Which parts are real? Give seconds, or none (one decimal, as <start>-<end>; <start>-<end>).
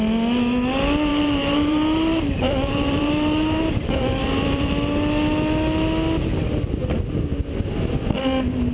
0.0-1.1; 4.7-8.7